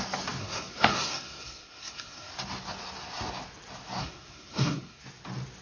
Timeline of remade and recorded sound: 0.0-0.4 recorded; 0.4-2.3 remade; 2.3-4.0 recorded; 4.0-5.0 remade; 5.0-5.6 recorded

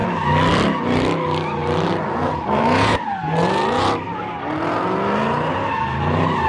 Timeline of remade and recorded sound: 0.0-6.5 recorded

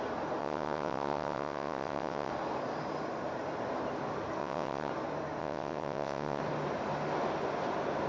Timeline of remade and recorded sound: 0.0-0.4 recorded; 0.4-2.3 remade; 2.3-4.4 recorded; 4.4-4.9 remade; 4.9-5.4 recorded; 5.4-6.4 remade; 6.4-8.1 recorded

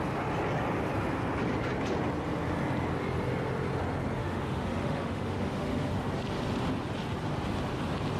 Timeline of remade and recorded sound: 0.0-4.2 recorded; 4.2-5.9 remade; 5.9-8.2 recorded

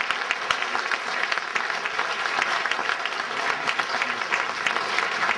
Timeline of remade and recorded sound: 0.0-1.5 remade; 1.5-2.1 recorded; 2.1-2.8 remade; 2.8-4.9 recorded; 4.9-5.4 remade

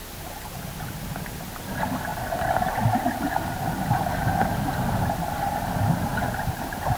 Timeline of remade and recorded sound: 0.0-1.5 remade; 1.5-7.0 recorded